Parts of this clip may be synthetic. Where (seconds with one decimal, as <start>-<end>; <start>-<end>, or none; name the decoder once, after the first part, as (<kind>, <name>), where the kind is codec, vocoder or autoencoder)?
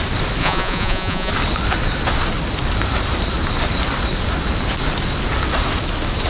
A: 0.4-1.3 (vocoder, Vocos)